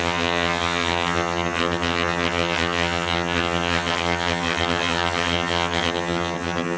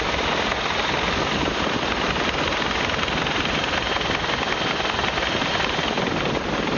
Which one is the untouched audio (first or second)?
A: second